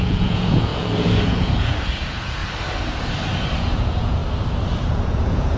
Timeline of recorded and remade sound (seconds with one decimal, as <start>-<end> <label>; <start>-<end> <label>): 0.0-2.4 remade; 2.4-3.6 recorded; 3.6-4.2 remade; 4.2-4.8 recorded; 4.8-5.6 remade